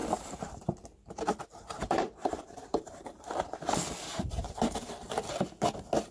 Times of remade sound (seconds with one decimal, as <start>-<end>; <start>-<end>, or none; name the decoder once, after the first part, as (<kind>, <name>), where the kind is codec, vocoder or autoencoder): 0.0-0.6 (vocoder, BigVGAN v2); 1.8-5.1